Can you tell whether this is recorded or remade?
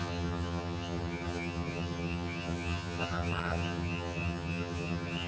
remade